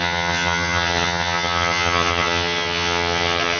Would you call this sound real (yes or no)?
no